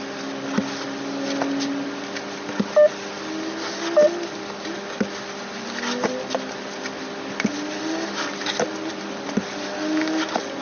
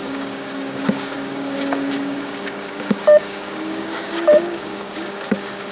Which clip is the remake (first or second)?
second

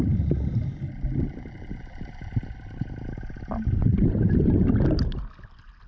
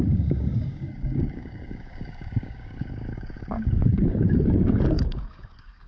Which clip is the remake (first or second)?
second